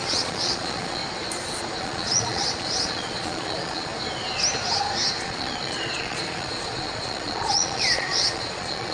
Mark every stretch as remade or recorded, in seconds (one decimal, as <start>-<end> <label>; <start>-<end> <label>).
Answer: 0.0-1.0 remade; 1.0-1.8 recorded; 1.8-3.9 remade; 3.9-5.2 recorded; 5.2-8.9 remade